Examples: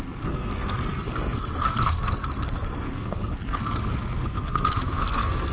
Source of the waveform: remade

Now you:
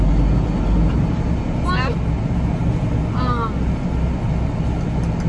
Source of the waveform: recorded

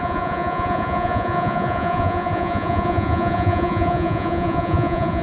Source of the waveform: remade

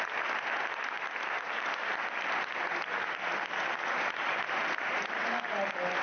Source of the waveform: recorded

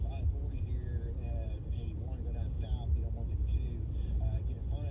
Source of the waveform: recorded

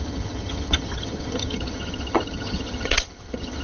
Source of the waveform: remade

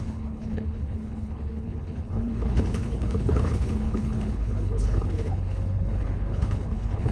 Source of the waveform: remade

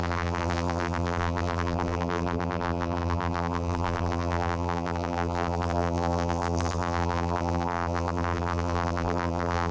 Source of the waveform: remade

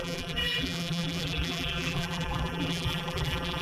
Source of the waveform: remade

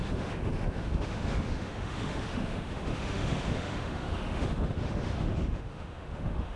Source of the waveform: remade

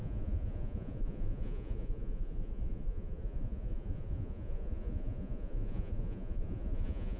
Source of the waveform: remade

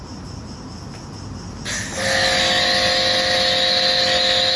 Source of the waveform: recorded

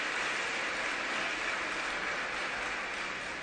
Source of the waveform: recorded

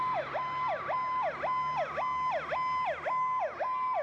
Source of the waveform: recorded